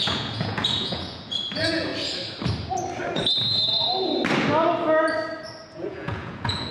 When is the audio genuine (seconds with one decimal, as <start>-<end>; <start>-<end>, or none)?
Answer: 1.9-5.7